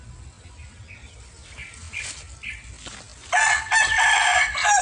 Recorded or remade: recorded